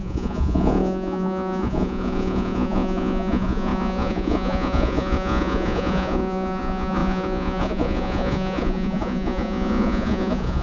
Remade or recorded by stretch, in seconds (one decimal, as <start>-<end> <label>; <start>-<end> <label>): 0.0-10.6 remade